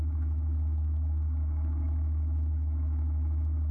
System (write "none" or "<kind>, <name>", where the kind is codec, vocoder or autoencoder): autoencoder, DAC-VAE